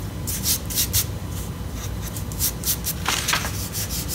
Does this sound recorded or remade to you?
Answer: recorded